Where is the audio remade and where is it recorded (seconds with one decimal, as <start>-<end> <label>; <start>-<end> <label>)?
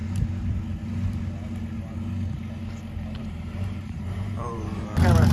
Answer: 0.0-3.2 recorded; 3.2-5.3 remade